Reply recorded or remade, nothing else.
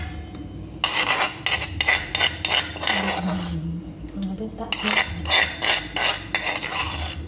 recorded